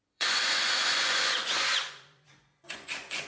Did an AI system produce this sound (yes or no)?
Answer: yes